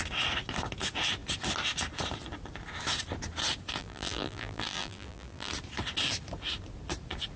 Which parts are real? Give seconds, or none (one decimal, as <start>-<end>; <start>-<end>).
0.0-3.8; 5.5-7.4